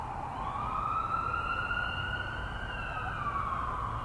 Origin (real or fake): real